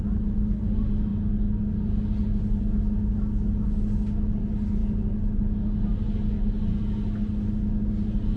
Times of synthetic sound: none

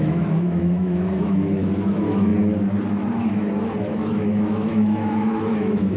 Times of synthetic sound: 0.0-2.3 (autoencoder, DAC-VAE); 3.8-6.0

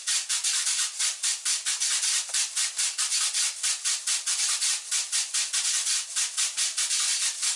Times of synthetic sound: none

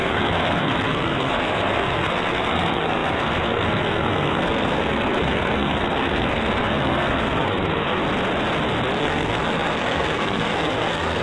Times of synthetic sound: 0.0-8.0 (codec, SNAC); 9.0-11.2

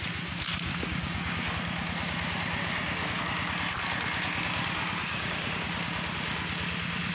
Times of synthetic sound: 0.7-1.5 (codec, DAC); 2.6-3.2; 4.8-5.5